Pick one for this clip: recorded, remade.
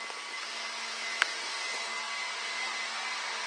recorded